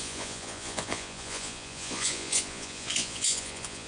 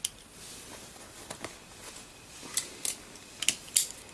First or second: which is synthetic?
first